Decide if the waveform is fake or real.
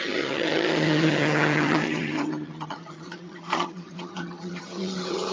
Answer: fake